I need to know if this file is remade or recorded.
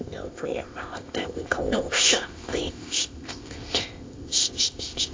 remade